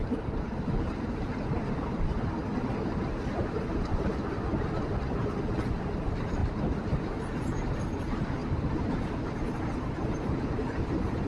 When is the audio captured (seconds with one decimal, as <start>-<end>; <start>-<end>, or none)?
0.0-11.3